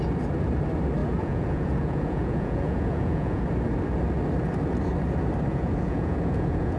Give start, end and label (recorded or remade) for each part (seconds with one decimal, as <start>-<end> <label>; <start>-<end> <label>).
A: 0.0-1.0 recorded; 1.0-3.4 remade; 3.4-5.5 recorded; 5.5-6.8 remade